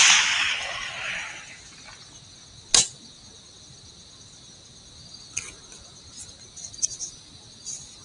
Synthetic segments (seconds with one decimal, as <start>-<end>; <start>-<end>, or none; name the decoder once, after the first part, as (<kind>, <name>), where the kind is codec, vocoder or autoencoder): none